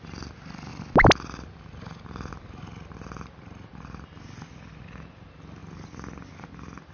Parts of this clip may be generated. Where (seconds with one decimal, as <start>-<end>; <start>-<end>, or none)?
none